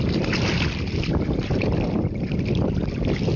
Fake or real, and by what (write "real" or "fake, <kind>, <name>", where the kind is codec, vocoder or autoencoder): real